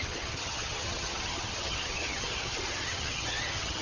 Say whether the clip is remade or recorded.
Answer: remade